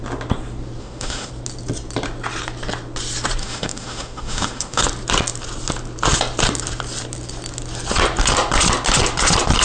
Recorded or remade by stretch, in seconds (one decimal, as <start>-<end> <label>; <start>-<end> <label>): 0.0-0.8 recorded; 0.8-1.3 remade; 1.3-3.4 recorded; 3.4-4.8 remade; 4.8-9.6 recorded